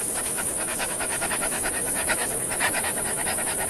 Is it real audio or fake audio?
fake